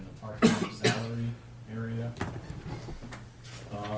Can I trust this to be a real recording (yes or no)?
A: yes